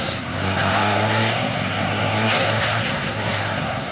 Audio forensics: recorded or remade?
remade